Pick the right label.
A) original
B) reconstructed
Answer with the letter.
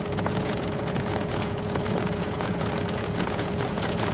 B